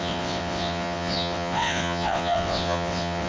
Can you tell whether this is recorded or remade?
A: remade